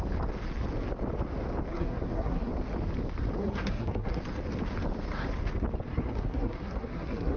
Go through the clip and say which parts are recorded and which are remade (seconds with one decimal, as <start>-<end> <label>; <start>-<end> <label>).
0.0-1.7 recorded; 1.7-2.5 remade; 2.5-3.4 recorded; 3.4-4.2 remade; 4.2-5.9 recorded; 5.9-7.4 remade